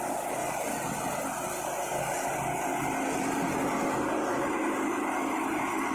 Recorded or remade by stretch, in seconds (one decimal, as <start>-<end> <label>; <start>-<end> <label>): 0.0-4.3 recorded; 4.3-5.0 remade; 5.0-5.9 recorded